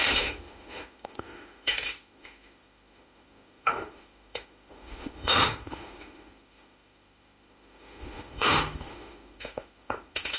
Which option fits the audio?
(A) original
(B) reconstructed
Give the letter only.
B